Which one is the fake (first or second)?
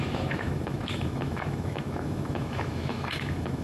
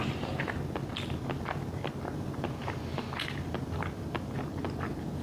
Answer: first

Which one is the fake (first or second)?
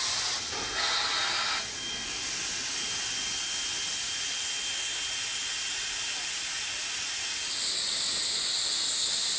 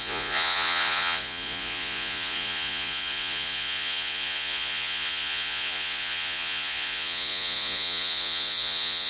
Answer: second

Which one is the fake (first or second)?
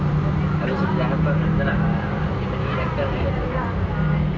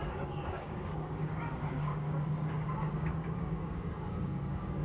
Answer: second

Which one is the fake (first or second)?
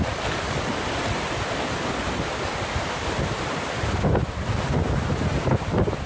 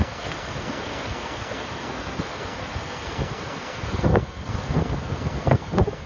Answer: second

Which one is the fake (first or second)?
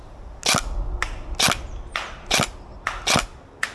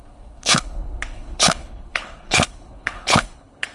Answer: second